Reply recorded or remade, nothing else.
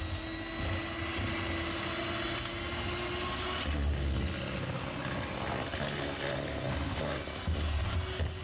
recorded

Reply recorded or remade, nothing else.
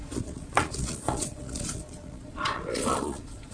remade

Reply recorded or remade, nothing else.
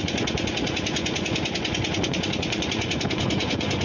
remade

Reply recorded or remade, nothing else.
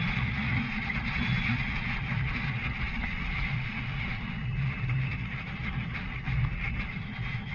remade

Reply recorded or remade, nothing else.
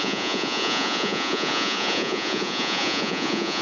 remade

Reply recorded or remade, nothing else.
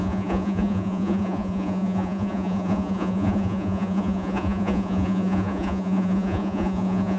remade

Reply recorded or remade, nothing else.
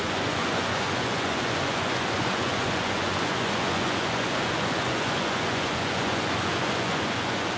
remade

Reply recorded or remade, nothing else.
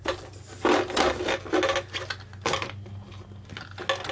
recorded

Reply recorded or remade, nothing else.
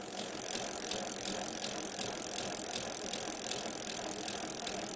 recorded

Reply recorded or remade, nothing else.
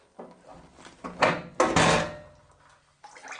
recorded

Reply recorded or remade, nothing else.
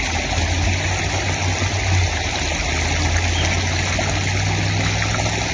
recorded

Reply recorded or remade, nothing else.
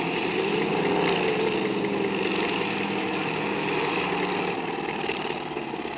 recorded